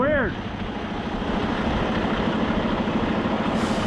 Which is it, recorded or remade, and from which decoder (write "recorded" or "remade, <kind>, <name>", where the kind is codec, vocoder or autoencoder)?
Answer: recorded